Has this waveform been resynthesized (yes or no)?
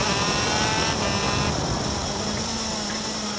no